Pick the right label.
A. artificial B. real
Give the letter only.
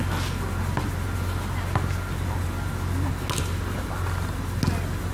B